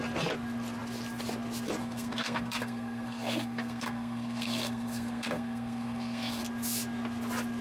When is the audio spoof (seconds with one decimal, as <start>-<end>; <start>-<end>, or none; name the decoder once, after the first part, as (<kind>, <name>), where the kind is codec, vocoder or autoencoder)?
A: 1.8-6.4 (codec, SNAC)